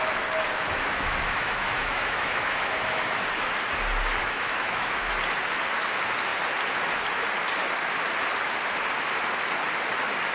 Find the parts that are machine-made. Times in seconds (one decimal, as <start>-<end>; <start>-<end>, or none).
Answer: 0.5-3.2; 4.2-5.1